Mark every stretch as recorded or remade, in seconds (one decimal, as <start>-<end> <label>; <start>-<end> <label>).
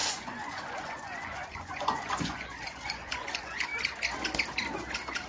0.0-3.7 remade; 3.7-5.3 recorded